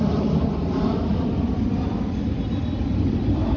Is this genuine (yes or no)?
yes